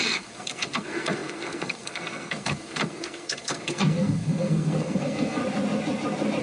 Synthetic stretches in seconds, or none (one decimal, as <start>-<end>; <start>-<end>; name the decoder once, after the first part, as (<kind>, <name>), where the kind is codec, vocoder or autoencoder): 0.0-5.4 (codec, SNAC)